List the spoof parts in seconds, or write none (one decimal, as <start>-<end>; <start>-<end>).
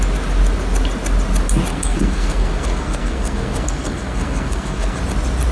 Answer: 1.7-5.0